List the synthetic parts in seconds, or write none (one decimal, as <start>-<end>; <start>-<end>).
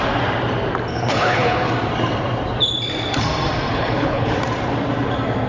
0.9-1.7; 3.7-4.3